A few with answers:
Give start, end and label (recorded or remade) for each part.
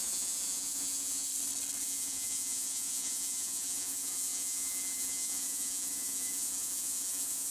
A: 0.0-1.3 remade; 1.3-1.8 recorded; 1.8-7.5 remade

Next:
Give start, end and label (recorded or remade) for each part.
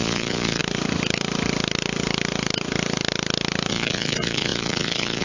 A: 0.0-0.6 remade; 0.6-3.7 recorded; 3.7-5.2 remade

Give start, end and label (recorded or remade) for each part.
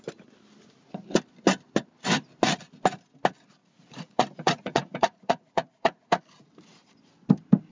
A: 0.0-3.6 recorded; 3.6-6.2 remade; 6.2-7.7 recorded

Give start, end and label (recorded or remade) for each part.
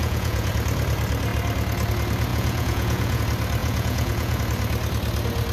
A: 0.0-0.5 remade; 0.5-2.3 recorded; 2.3-3.2 remade; 3.2-3.6 recorded; 3.6-4.4 remade; 4.4-5.5 recorded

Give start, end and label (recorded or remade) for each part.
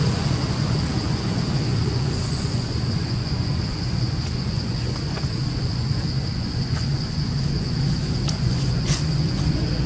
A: 0.0-9.9 remade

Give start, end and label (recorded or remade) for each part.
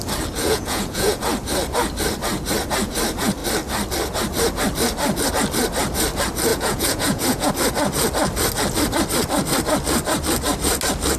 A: 0.0-0.4 recorded; 0.4-1.2 remade; 1.2-6.5 recorded; 6.5-7.5 remade; 7.5-11.2 recorded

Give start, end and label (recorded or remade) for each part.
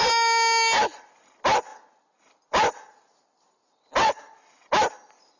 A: 0.0-5.4 recorded